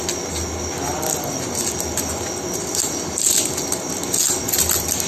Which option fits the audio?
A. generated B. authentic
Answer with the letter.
B